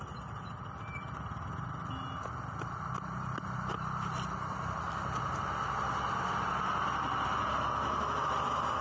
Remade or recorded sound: recorded